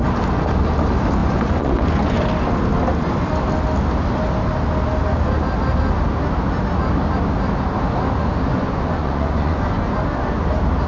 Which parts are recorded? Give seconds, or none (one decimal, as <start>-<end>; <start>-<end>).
0.0-1.2; 2.2-8.5; 9.8-10.9

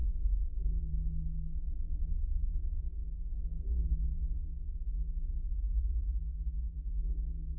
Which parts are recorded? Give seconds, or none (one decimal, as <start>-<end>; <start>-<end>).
0.0-3.0

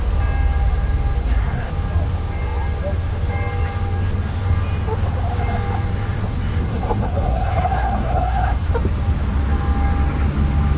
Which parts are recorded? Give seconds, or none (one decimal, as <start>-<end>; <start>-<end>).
0.0-1.2; 1.7-6.6; 8.7-10.8

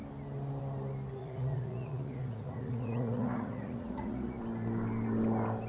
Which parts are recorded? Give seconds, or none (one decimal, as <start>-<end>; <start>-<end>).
0.0-1.2; 4.4-5.7

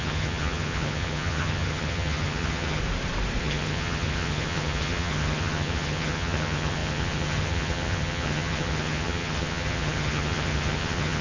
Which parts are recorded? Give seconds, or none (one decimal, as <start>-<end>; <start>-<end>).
2.8-3.4

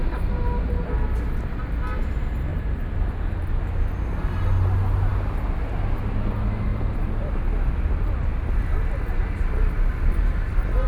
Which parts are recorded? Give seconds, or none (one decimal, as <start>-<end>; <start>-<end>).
0.0-2.5; 3.6-10.9

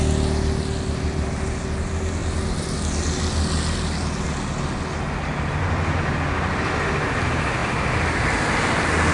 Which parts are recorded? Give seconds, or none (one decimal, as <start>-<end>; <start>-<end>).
0.0-9.1

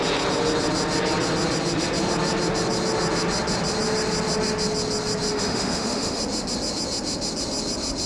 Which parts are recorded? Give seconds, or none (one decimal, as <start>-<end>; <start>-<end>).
0.0-5.3; 6.2-8.1